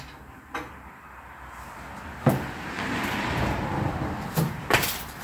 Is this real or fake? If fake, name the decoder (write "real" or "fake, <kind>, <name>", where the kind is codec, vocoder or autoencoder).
real